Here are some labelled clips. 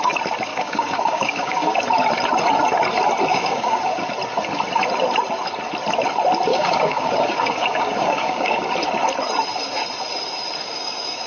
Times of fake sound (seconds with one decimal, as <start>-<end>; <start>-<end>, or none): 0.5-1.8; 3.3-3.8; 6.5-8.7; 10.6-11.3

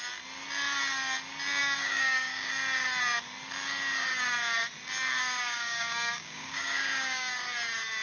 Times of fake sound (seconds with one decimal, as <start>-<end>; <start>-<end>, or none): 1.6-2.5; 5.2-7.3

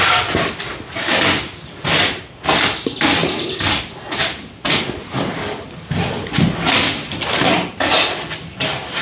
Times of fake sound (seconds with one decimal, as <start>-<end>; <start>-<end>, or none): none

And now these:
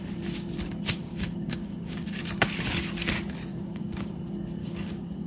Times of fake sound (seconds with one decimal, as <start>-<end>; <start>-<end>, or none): 1.1-2.2; 3.5-4.1; 4.6-5.3

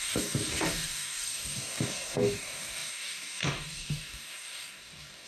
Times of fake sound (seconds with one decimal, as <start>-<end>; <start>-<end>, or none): 0.0-5.3

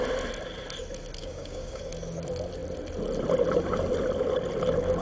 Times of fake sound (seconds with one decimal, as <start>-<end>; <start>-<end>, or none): 1.2-1.8

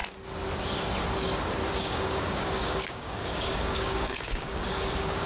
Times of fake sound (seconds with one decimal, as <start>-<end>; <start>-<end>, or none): 1.7-5.3